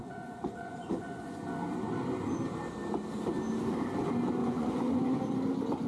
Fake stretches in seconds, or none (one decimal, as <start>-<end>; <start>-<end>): 0.0-1.4; 4.4-5.2

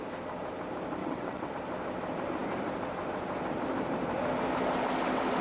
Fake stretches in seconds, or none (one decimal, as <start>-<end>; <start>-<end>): 1.0-1.5